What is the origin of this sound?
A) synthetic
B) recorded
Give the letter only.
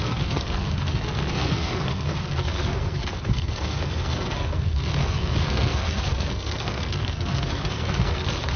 A